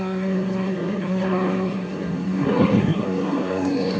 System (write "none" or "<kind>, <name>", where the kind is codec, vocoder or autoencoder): codec, SNAC